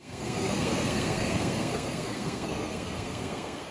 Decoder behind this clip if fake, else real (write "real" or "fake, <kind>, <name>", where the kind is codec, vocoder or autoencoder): fake, codec, SNAC